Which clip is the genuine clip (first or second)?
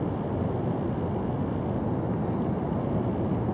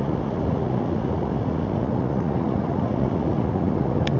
first